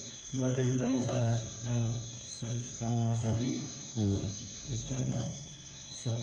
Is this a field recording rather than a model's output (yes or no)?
no